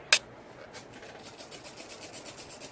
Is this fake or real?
real